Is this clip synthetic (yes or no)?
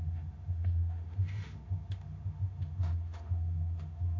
yes